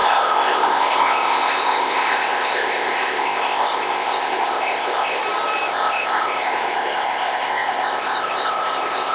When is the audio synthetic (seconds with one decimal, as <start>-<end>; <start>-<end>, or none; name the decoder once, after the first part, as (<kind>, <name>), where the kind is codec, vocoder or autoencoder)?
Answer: 0.0-5.2 (codec, ZipCodec); 5.7-9.1